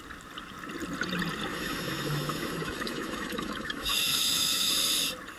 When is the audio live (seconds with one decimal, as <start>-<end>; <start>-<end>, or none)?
0.0-1.5; 4.7-5.4